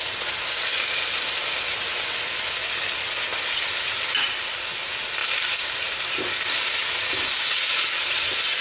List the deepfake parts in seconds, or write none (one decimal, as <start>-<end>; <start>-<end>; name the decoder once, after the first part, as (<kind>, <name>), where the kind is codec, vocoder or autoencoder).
5.2-6.2 (vocoder, BigVGAN v2)